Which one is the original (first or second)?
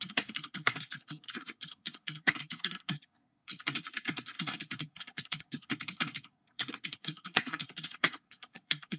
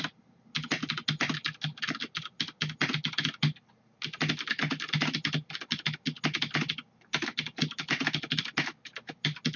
second